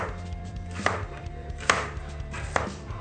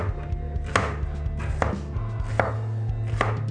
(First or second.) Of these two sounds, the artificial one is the first